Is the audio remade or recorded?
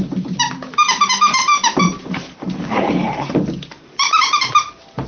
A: remade